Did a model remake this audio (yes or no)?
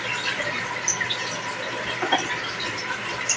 no